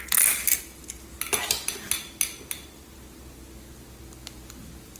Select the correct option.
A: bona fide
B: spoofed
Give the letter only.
A